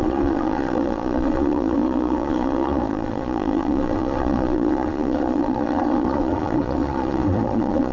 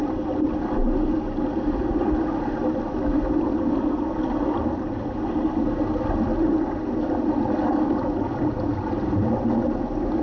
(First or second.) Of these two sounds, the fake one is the first